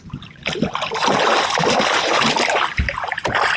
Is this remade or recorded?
recorded